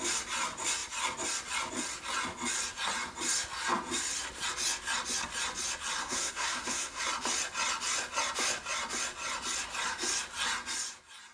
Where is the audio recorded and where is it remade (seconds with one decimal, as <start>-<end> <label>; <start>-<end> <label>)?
0.0-6.0 recorded; 6.0-7.0 remade; 7.0-11.3 recorded